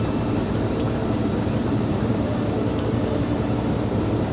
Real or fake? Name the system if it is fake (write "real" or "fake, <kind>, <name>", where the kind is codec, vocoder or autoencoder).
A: fake, vocoder, BigVGAN v2